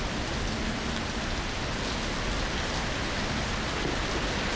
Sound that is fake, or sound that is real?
real